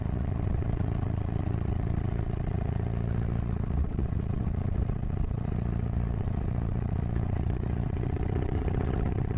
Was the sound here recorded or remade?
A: remade